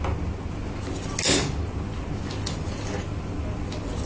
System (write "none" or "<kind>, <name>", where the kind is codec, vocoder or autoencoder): none